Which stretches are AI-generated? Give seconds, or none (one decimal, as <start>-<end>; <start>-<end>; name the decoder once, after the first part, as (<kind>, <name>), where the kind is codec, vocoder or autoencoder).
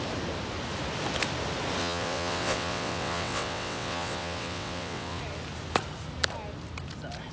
1.8-5.2 (vocoder, WaveNeXt)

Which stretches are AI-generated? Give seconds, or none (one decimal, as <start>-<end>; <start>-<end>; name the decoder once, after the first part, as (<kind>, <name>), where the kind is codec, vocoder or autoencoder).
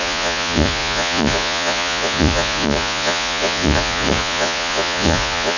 0.0-5.6 (vocoder, Vocos)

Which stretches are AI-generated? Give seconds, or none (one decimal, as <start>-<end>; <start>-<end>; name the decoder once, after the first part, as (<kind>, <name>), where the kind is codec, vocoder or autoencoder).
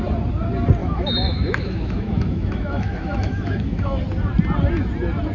0.8-4.0 (autoencoder, DAC-VAE)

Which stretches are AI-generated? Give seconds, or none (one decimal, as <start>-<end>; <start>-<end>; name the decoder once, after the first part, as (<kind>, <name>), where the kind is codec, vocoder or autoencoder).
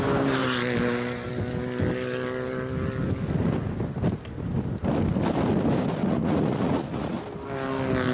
6.0-7.2 (vocoder, Vocos)